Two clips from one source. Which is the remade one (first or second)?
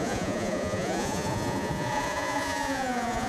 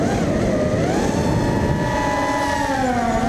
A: first